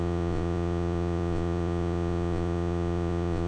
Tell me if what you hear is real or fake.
fake